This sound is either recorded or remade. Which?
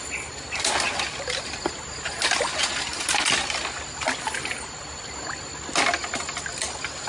recorded